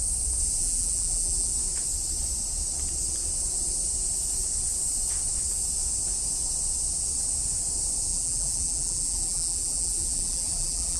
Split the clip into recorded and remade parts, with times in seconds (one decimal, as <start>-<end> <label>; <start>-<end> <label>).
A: 0.0-0.6 recorded; 0.6-1.5 remade; 1.5-8.1 recorded; 8.1-11.0 remade